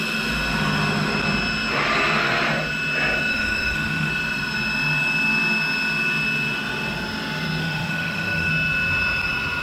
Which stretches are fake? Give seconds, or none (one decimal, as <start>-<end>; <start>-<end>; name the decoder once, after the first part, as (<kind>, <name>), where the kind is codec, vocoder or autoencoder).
3.3-4.1 (autoencoder, DAC-VAE); 7.6-8.5